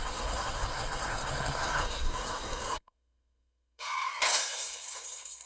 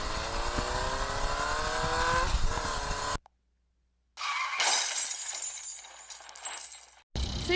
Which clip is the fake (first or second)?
first